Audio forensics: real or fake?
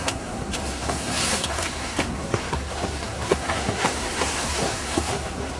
fake